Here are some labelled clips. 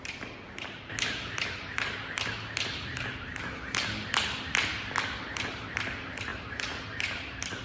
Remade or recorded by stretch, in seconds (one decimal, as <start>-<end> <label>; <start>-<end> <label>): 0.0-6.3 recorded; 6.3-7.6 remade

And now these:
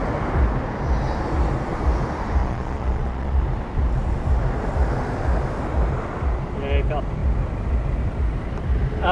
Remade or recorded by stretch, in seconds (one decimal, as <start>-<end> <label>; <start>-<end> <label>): 0.0-2.4 recorded; 2.4-3.4 remade; 3.4-9.1 recorded

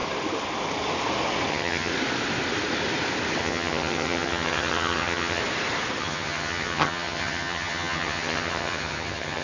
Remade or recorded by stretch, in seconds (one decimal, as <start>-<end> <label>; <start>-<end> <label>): 0.0-1.5 recorded; 1.5-1.9 remade; 1.9-3.4 recorded; 3.4-5.4 remade; 5.4-6.0 recorded; 6.0-9.4 remade